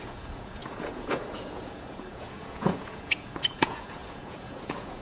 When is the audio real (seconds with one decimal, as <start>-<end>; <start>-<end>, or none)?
none